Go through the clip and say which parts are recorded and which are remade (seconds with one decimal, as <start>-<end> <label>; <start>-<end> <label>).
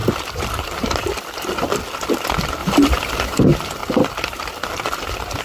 0.0-1.8 remade; 1.8-2.6 recorded; 2.6-3.4 remade; 3.4-3.8 recorded; 3.8-5.4 remade